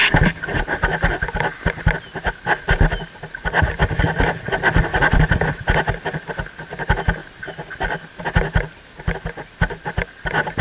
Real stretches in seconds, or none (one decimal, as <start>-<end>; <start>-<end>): 0.0-10.6